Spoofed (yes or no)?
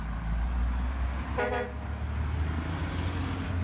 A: no